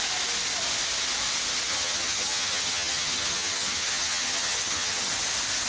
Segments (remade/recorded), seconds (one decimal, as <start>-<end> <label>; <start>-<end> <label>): 0.0-1.7 recorded; 1.7-5.1 remade; 5.1-5.7 recorded

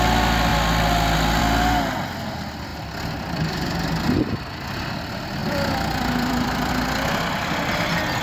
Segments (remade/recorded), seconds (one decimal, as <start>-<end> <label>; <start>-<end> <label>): 0.0-2.7 recorded; 2.7-4.4 remade; 4.4-5.4 recorded; 5.4-6.7 remade; 6.7-8.2 recorded

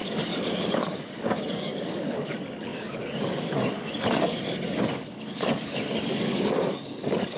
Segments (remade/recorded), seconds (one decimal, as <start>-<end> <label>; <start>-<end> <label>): 0.0-7.4 remade

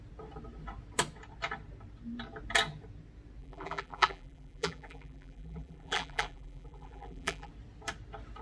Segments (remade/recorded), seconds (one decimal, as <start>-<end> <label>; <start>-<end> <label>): 0.0-3.4 recorded; 3.4-7.5 remade; 7.5-8.4 recorded